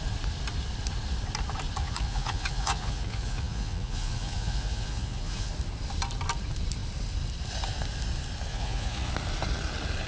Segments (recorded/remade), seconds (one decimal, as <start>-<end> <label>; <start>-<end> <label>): 0.0-1.8 recorded; 1.8-5.5 remade; 5.5-8.5 recorded; 8.5-9.1 remade; 9.1-10.1 recorded